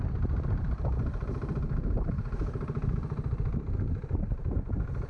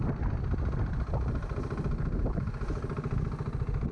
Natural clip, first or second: second